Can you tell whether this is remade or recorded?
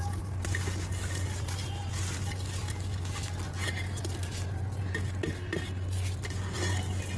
recorded